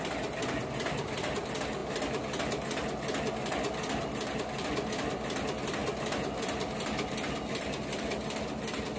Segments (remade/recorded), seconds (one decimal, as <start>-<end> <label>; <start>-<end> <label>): 0.0-9.0 recorded